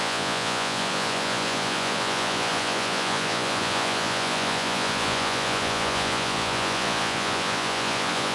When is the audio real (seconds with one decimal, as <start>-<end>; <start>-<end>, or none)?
none